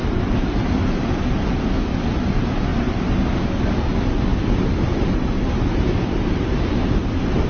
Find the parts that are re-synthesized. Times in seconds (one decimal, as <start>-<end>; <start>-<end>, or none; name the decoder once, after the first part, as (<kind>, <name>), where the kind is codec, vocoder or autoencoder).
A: 0.0-0.7 (vocoder, BigVGAN v2); 2.7-3.3; 4.3-6.8